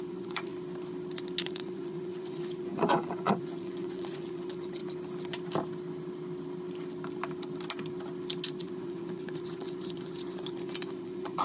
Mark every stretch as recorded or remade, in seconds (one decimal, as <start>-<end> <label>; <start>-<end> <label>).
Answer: 0.0-0.5 remade; 0.5-1.4 recorded; 1.4-4.8 remade; 4.8-8.6 recorded; 8.6-11.4 remade